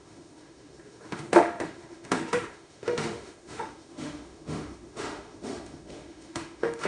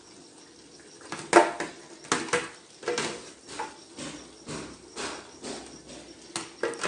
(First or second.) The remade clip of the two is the first